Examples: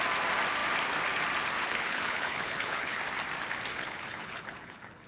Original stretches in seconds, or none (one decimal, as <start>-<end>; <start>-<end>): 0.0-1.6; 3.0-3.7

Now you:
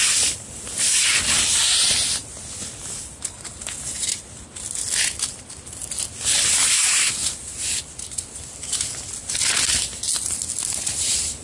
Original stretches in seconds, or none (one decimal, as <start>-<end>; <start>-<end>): 0.0-11.4

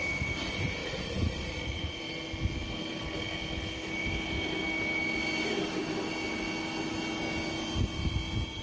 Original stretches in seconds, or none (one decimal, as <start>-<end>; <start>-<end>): 0.0-0.8; 2.0-8.6

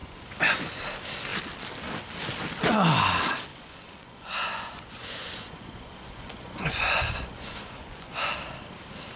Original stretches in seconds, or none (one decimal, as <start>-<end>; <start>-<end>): 0.7-3.5; 8.3-9.2

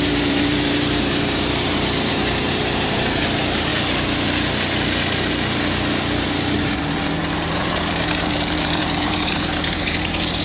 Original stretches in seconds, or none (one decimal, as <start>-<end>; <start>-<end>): 3.7-6.6